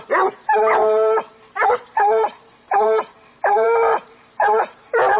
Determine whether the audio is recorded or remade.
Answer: remade